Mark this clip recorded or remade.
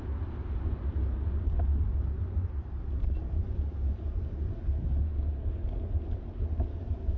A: recorded